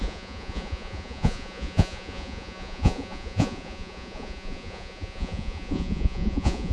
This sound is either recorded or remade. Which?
remade